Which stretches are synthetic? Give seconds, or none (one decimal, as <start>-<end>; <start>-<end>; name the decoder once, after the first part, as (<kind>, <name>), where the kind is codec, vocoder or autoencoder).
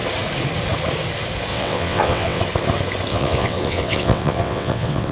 1.5-2.4 (vocoder, WaveNeXt); 3.1-5.1